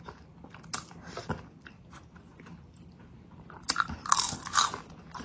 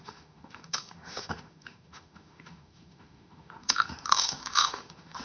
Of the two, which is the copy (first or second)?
second